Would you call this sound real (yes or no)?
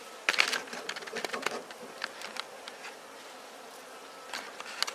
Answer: yes